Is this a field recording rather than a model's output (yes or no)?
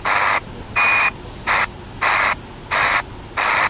yes